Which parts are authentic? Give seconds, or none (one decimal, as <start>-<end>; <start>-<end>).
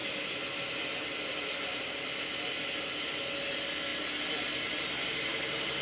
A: 0.0-3.5; 3.9-4.5